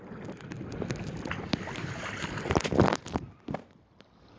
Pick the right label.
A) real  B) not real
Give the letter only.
A